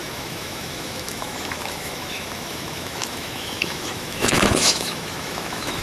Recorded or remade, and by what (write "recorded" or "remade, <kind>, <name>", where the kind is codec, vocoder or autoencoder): remade, autoencoder, DAC-VAE